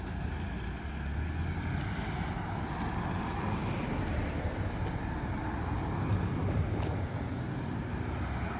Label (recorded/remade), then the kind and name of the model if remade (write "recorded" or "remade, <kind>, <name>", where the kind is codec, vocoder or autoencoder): recorded